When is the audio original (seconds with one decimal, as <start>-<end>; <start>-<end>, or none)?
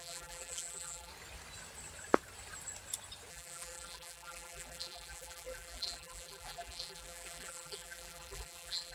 1.1-3.3